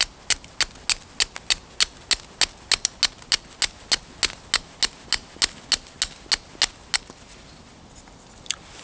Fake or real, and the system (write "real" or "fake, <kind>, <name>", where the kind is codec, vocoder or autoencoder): real